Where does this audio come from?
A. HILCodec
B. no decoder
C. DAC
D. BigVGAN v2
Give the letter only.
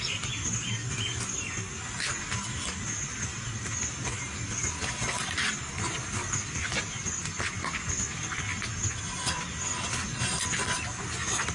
B